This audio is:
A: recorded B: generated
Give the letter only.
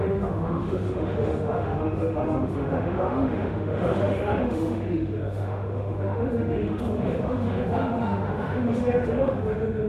B